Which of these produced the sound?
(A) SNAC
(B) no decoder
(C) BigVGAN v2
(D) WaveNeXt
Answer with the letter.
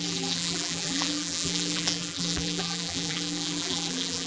C